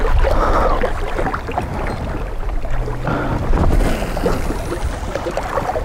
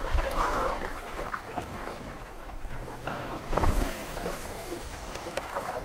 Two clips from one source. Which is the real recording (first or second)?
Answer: first